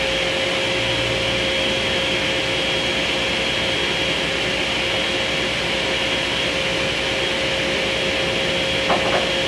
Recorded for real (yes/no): yes